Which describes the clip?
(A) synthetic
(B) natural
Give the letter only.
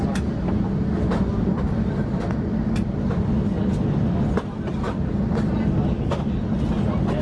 B